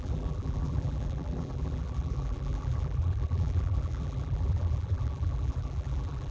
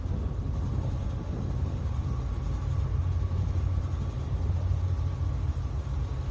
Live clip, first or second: second